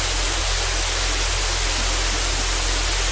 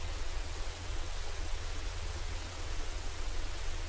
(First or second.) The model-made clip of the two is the second